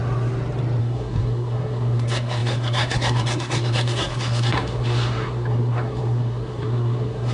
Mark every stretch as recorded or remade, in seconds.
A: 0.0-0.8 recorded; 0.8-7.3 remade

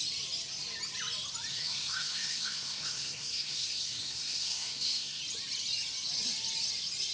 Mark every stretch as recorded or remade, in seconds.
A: 0.0-1.5 recorded; 1.5-5.2 remade; 5.2-7.1 recorded

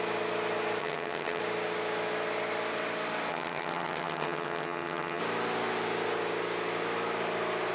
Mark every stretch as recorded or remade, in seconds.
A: 0.0-0.8 recorded; 0.8-1.4 remade; 1.4-3.3 recorded; 3.3-5.2 remade; 5.2-7.7 recorded

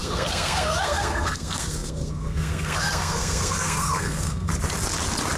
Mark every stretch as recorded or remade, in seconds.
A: 0.0-4.5 remade; 4.5-5.4 recorded